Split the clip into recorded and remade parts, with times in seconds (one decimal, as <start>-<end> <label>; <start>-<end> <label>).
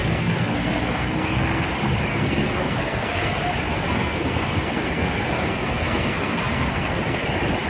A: 0.0-1.7 remade; 1.7-2.1 recorded; 2.1-3.3 remade; 3.3-3.7 recorded; 3.7-7.2 remade; 7.2-7.7 recorded